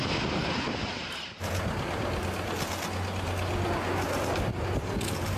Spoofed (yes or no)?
no